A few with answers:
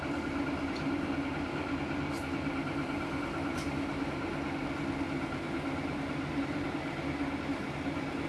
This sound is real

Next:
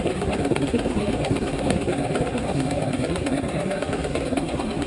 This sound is fake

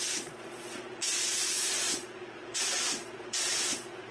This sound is fake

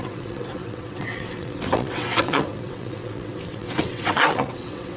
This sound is fake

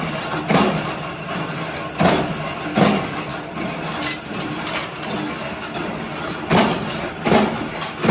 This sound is real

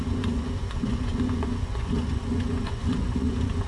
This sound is fake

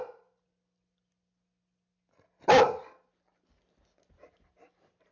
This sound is real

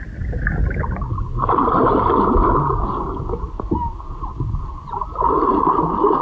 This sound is real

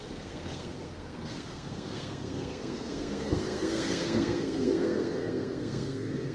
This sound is fake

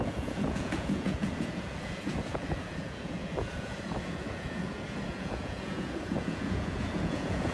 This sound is fake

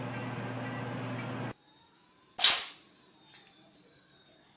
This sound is real